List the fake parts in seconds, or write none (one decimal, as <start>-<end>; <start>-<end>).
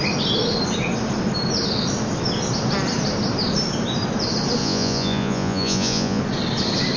4.6-6.2